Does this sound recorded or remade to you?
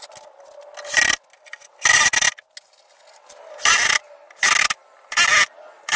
recorded